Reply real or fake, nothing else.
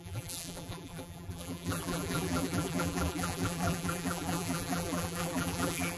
fake